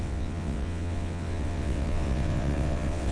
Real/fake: fake